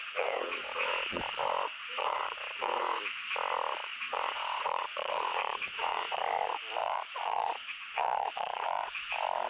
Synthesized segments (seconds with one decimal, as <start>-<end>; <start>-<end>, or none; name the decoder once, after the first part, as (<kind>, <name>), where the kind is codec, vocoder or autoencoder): 0.0-1.2 (vocoder, Vocos); 1.8-3.0; 3.9-6.2; 6.8-9.1